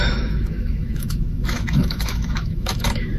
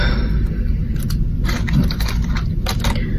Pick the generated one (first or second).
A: first